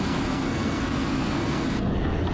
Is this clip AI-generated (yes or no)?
yes